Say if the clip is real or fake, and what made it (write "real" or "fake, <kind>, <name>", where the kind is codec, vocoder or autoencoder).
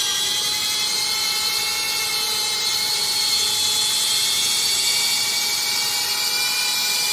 fake, vocoder, BigVGAN v2